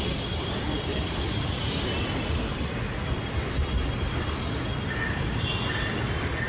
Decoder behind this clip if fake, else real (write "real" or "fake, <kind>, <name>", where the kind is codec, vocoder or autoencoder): fake, vocoder, BigVGAN v2